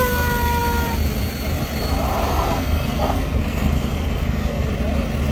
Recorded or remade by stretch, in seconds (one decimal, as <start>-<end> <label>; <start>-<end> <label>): 0.0-2.3 recorded; 2.3-4.7 remade; 4.7-5.3 recorded